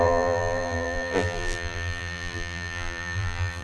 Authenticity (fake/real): fake